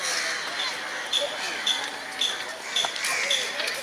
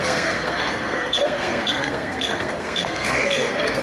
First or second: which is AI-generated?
second